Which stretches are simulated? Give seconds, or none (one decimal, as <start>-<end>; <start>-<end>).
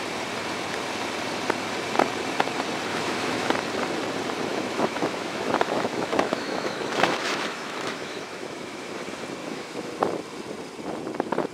2.9-3.5; 4.5-9.0; 9.4-9.9